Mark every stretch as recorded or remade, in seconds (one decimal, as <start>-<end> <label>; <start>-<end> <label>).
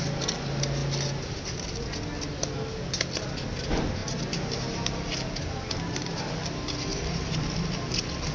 0.0-6.9 recorded; 6.9-7.6 remade; 7.6-8.3 recorded